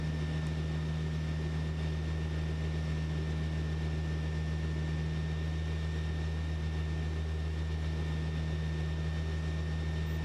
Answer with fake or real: real